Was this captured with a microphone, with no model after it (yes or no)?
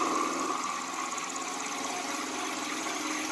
yes